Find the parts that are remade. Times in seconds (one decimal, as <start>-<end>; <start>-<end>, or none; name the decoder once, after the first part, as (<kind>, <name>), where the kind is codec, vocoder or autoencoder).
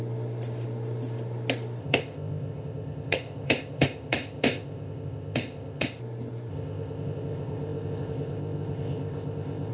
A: 1.8-6.0 (codec, ZipCodec); 6.5-9.7